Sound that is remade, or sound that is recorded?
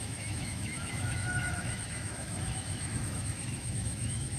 remade